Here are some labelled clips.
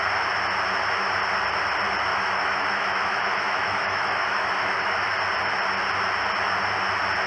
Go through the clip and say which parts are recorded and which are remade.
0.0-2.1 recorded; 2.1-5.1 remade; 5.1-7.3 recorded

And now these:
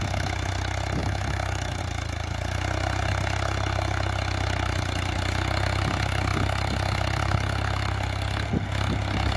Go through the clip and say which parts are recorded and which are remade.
0.0-1.0 recorded; 1.0-1.8 remade; 1.8-9.4 recorded